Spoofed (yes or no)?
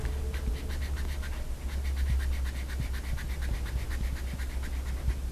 no